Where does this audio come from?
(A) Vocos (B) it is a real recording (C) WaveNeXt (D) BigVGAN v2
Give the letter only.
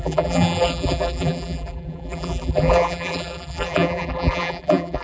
D